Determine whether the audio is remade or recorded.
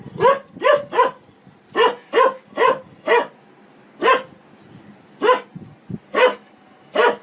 recorded